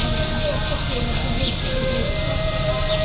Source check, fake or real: real